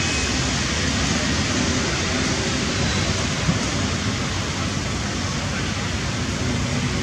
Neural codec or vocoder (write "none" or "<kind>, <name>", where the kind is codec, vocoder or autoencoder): none